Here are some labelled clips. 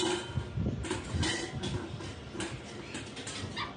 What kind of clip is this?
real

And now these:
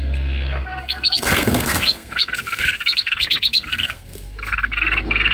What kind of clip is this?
fake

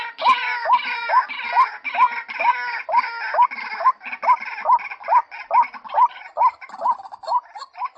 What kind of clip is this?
real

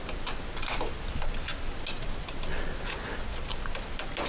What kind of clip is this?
real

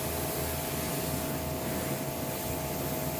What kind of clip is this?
real